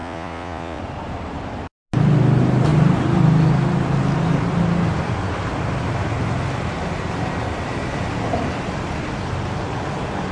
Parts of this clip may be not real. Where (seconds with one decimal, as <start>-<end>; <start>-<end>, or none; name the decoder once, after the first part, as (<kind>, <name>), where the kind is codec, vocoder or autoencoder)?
0.0-0.8 (vocoder, Vocos)